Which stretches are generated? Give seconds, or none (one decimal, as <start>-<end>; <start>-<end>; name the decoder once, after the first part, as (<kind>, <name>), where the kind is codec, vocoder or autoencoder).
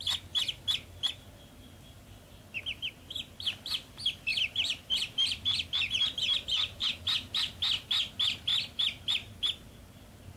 4.3-6.9 (vocoder, BigVGAN v2)